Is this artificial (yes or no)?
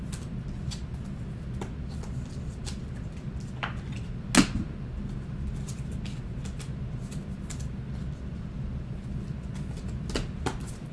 no